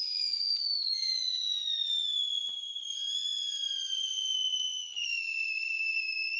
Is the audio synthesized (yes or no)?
yes